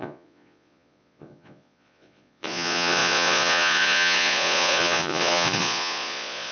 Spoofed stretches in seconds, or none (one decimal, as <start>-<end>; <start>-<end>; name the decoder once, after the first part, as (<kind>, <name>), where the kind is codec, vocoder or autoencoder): 0.0-6.5 (vocoder, Vocos)